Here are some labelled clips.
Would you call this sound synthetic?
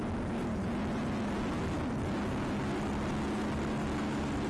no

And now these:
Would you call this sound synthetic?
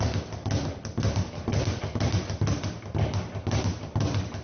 no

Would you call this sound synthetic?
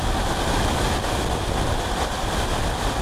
no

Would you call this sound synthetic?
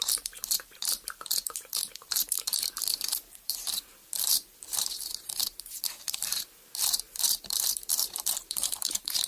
yes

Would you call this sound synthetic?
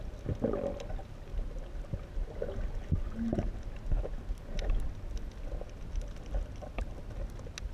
no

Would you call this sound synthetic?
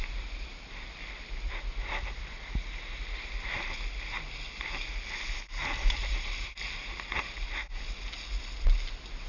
no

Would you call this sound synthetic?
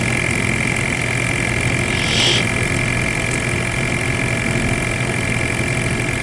no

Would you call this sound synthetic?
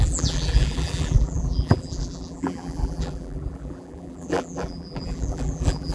yes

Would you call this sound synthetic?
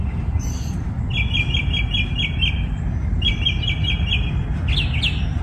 no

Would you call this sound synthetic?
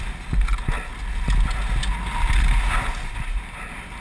no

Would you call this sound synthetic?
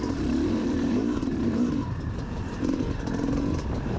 yes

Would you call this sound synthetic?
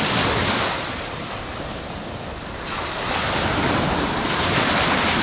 yes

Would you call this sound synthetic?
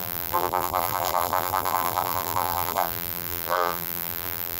yes